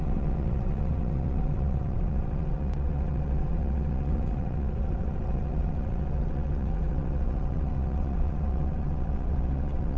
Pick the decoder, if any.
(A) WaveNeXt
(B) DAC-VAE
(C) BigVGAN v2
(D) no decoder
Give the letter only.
A